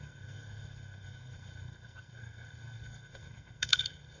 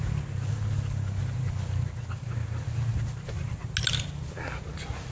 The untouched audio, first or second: second